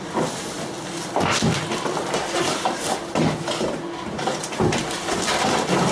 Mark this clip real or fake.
real